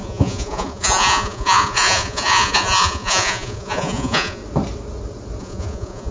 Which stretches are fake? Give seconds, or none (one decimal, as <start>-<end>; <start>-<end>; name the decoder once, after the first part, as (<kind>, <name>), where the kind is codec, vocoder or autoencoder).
0.0-4.4 (vocoder, Vocos); 5.4-6.1